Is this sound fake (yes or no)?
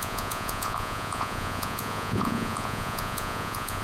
yes